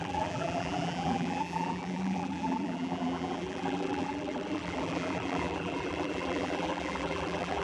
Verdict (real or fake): fake